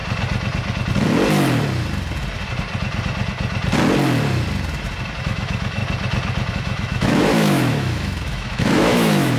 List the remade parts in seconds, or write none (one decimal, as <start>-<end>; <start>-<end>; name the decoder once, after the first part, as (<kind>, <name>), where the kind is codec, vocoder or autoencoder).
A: 5.2-5.8 (autoencoder, DAC-VAE); 6.5-9.4